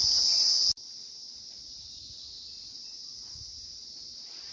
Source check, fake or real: real